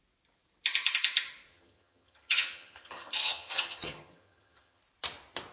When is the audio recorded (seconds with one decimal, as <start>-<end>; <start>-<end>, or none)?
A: 0.0-1.5; 4.8-5.5